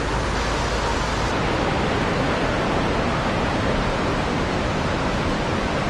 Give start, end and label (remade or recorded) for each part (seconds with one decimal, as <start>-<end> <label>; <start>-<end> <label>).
0.0-4.1 recorded; 4.1-5.9 remade